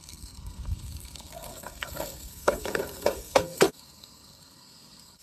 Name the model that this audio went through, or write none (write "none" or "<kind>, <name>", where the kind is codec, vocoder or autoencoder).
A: codec, SNAC